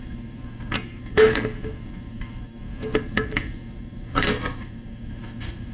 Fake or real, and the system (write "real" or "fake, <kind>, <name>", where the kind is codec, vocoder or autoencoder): fake, codec, SNAC